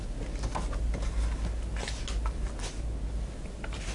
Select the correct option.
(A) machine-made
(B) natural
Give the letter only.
B